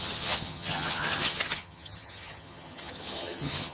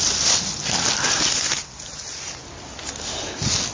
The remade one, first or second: first